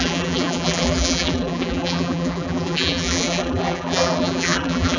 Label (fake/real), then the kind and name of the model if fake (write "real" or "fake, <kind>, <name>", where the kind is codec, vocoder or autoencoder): fake, vocoder, BigVGAN v2